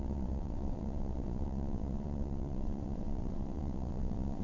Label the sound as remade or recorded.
remade